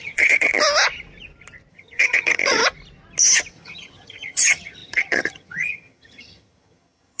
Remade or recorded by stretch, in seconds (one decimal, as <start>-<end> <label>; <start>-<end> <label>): 0.0-0.5 remade; 0.5-1.7 recorded; 1.7-2.6 remade; 2.6-3.5 recorded; 3.5-7.2 remade